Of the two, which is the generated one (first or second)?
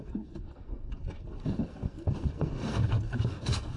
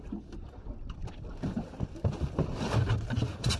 first